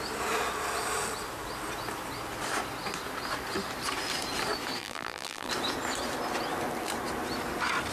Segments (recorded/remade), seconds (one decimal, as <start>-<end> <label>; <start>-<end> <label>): 0.0-4.8 recorded; 4.8-5.5 remade; 5.5-7.9 recorded